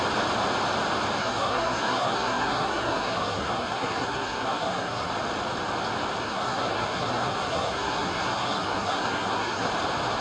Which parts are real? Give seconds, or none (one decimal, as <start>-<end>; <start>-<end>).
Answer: 0.0-1.2; 5.1-6.2; 9.7-10.2